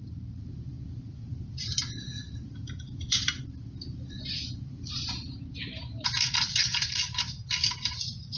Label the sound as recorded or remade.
remade